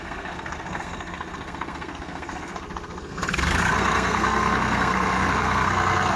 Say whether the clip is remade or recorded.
remade